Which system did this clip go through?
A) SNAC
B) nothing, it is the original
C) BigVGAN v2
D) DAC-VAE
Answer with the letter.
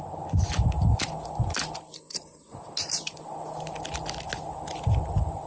B